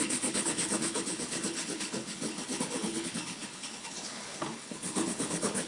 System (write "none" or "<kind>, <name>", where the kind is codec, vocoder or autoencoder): codec, HILCodec